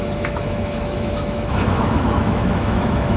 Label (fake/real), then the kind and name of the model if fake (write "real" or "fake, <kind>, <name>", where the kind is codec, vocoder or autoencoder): fake, autoencoder, DAC-VAE